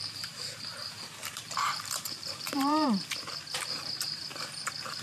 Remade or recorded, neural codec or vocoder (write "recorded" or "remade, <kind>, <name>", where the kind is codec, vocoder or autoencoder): remade, vocoder, BigVGAN v2